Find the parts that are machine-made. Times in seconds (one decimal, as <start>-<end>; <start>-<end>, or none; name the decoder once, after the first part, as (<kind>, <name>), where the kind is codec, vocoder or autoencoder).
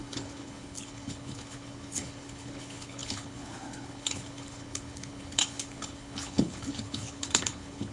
0.0-7.9 (codec, HILCodec)